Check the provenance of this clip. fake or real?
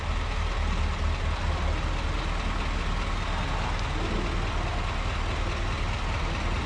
real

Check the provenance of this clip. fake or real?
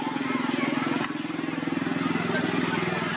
real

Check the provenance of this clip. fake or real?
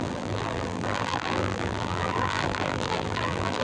fake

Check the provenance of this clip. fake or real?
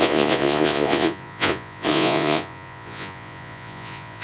fake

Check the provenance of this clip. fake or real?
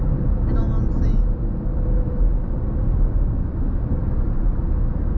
real